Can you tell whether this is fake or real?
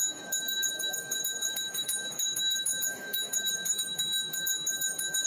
fake